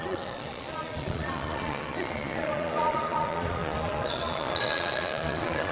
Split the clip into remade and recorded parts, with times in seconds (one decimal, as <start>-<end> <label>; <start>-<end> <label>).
0.0-5.7 remade